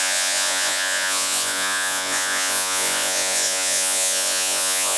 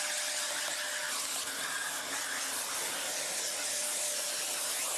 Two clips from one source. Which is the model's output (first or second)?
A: first